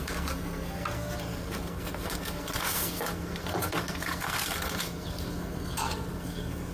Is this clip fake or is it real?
fake